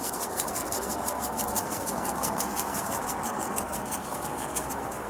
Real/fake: fake